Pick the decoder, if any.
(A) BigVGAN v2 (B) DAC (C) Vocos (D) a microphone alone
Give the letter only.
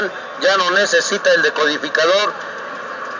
D